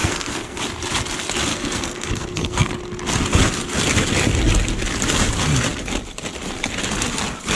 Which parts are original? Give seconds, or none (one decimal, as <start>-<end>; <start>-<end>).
0.6-1.5; 2.7-7.5

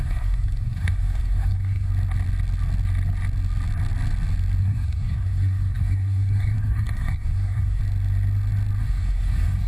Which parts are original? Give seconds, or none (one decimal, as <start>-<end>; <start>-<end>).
1.9-4.6; 7.8-8.8

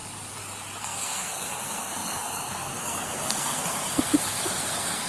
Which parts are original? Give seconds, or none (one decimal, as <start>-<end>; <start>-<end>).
0.0-0.8

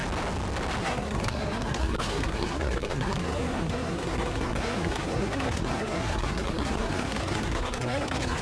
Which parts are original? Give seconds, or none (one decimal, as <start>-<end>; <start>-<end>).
0.0-0.8

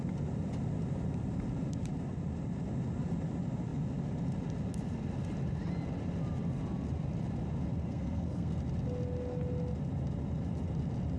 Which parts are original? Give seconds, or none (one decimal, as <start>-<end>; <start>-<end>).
0.0-7.8; 8.6-11.2

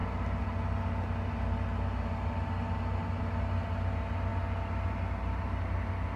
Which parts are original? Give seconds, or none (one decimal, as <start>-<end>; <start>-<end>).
0.0-6.2

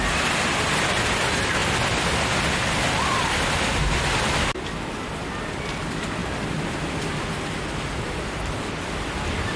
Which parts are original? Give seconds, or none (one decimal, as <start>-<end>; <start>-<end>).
0.0-9.6

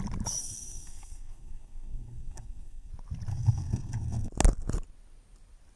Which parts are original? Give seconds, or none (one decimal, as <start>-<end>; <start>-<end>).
0.0-0.4; 2.9-3.3; 4.3-5.8